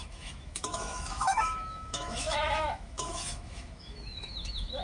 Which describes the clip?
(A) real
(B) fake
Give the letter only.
B